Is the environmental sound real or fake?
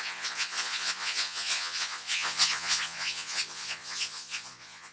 fake